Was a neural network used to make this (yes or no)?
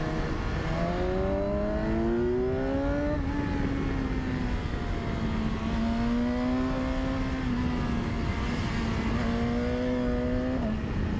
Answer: no